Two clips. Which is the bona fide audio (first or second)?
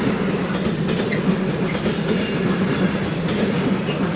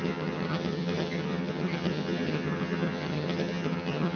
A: first